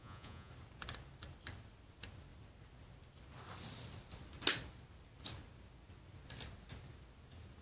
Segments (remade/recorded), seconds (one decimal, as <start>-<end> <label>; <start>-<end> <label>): 0.0-0.5 remade; 0.5-7.6 recorded